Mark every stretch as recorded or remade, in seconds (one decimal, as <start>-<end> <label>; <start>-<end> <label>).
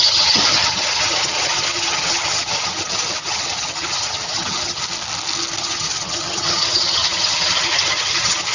0.0-4.8 remade; 4.8-5.6 recorded; 5.6-8.5 remade